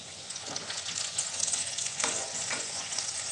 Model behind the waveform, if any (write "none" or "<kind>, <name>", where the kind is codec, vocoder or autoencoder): vocoder, Vocos